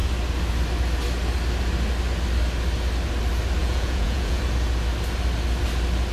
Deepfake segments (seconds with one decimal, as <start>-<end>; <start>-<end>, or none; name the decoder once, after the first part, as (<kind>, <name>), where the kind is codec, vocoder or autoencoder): 3.6-4.4 (vocoder, Vocos)